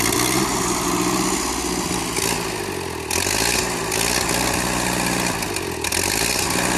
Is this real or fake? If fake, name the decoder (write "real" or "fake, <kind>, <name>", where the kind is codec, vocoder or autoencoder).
real